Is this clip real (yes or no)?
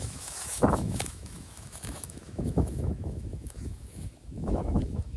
no